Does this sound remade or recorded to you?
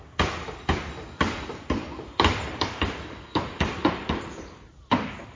remade